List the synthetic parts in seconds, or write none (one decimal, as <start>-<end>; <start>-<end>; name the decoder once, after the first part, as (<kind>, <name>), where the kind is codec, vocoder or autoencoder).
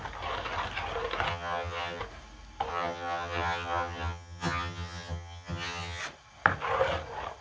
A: 1.3-2.0 (vocoder, HiFi-GAN); 2.7-6.0